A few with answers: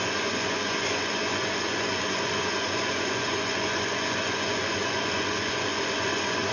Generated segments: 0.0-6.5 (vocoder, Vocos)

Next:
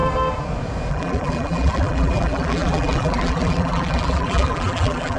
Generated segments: 0.9-5.2 (vocoder, BigVGAN v2)

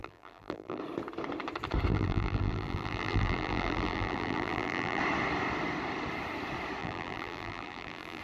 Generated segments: 0.0-0.8 (vocoder, BigVGAN v2); 1.9-5.0; 6.8-8.2

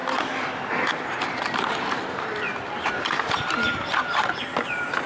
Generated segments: none

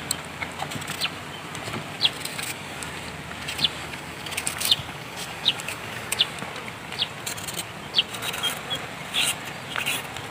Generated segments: 2.3-2.9 (codec, DAC); 3.8-6.2

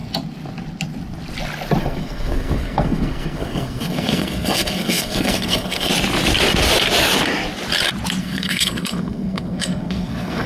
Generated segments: 1.8-5.9 (codec, SNAC); 8.2-10.5